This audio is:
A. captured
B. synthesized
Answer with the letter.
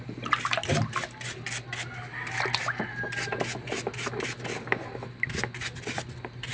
A